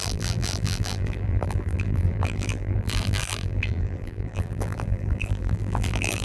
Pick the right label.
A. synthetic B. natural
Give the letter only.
A